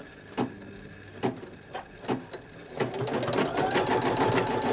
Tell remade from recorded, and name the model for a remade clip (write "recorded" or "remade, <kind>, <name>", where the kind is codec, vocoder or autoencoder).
recorded